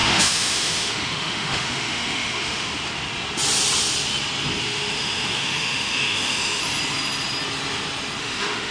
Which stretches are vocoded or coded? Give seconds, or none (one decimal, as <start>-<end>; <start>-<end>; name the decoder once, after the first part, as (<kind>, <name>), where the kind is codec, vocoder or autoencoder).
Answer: 0.0-2.7 (autoencoder, DAC-VAE); 4.6-6.6; 8.2-8.7